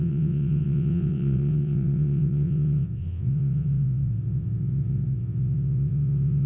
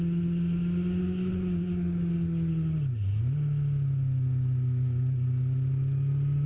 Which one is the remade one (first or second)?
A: first